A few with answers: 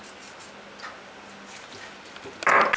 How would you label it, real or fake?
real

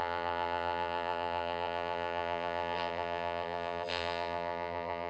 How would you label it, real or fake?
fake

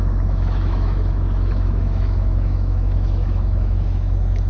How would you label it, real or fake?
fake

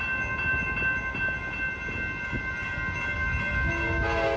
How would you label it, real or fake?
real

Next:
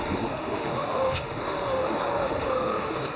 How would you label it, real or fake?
fake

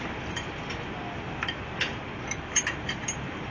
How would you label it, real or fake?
real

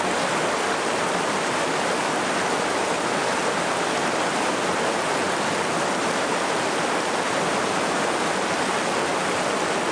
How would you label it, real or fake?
real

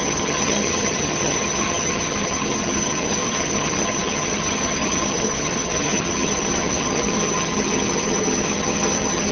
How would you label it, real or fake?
fake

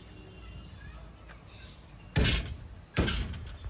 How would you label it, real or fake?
real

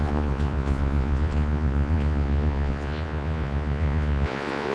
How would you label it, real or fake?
fake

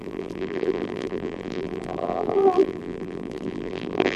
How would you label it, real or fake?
fake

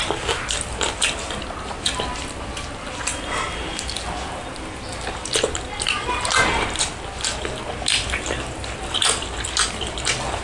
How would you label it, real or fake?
real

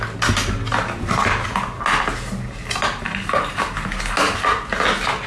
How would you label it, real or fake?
real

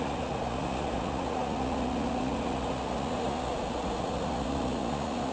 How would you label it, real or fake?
fake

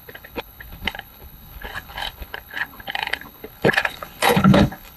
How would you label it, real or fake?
fake